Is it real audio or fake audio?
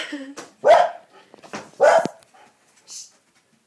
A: real